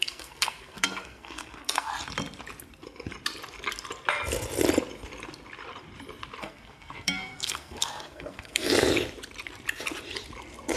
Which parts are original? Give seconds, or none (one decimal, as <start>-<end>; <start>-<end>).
1.9-6.4; 8.7-10.8